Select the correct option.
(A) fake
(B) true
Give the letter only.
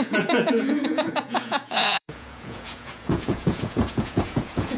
A